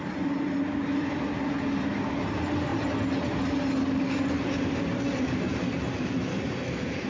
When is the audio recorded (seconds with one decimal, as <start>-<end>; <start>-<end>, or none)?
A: 0.0-7.1